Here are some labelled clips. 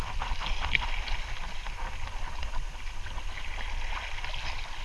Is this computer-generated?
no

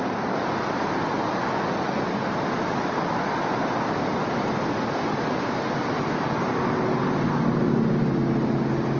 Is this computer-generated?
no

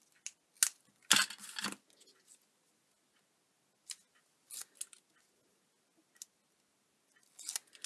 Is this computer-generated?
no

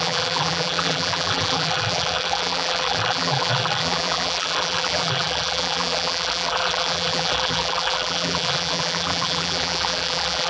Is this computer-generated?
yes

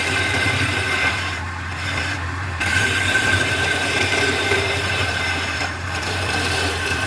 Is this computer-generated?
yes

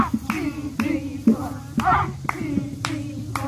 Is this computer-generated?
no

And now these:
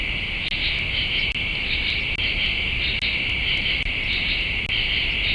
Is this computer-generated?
no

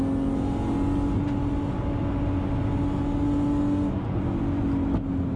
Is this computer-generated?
no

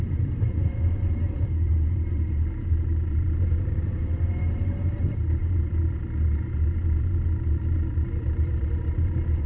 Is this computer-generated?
yes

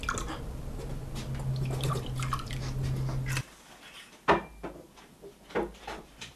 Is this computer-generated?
no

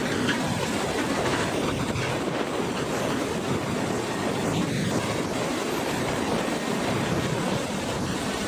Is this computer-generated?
no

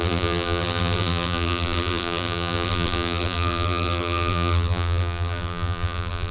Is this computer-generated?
yes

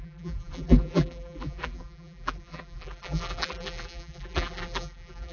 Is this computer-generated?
yes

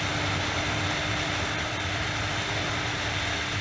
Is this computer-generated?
no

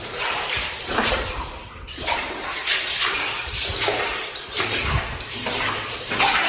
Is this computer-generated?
yes